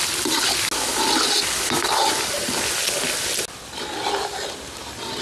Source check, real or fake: real